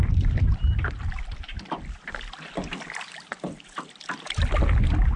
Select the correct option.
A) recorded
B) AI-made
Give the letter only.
A